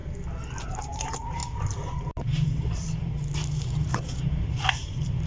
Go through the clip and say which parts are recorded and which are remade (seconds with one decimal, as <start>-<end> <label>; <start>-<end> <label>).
0.0-0.6 recorded; 0.6-1.4 remade; 1.4-2.0 recorded; 2.0-5.3 remade